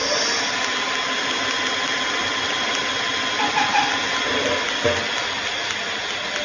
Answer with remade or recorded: recorded